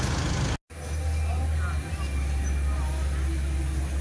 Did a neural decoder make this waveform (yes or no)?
no